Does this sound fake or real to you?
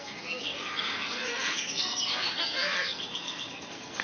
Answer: fake